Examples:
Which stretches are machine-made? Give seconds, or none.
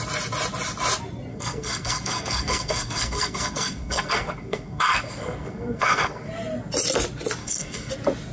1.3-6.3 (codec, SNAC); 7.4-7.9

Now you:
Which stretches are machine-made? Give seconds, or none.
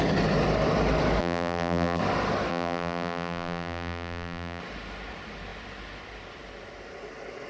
1.2-2.0 (vocoder, BigVGAN v2); 2.5-4.6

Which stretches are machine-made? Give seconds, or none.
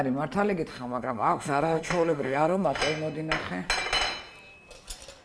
0.7-2.8 (autoencoder, DAC-VAE)